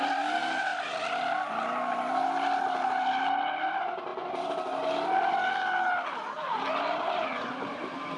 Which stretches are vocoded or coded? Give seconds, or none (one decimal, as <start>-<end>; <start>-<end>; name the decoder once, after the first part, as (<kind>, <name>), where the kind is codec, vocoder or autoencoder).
none